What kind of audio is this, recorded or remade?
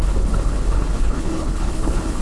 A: remade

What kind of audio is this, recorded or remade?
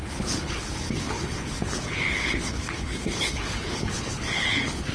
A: remade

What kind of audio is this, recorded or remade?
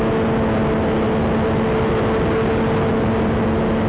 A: recorded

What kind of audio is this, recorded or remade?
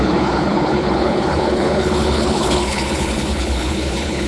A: remade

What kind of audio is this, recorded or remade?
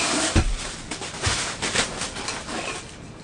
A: recorded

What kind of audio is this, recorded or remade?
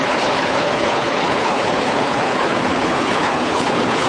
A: remade